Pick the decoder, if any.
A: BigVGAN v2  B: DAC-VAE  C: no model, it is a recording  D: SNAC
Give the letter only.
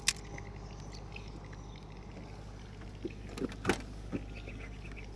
C